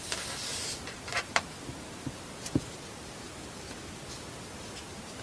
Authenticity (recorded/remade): recorded